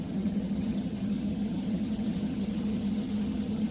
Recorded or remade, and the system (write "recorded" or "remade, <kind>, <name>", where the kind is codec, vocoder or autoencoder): remade, vocoder, HiFi-GAN